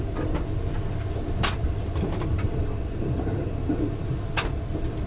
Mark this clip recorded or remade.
recorded